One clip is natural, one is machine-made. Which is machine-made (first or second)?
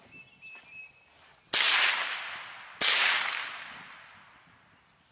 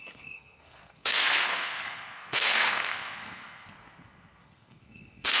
second